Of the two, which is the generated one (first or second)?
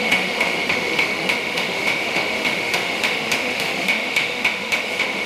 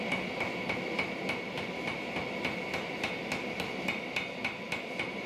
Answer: first